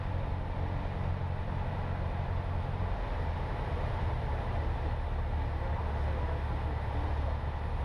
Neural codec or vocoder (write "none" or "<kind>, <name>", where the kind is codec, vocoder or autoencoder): none